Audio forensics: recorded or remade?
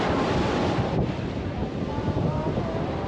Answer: remade